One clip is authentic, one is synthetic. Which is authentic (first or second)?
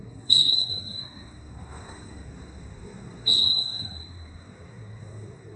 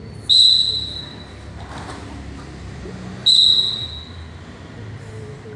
second